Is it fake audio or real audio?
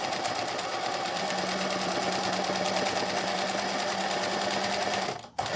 real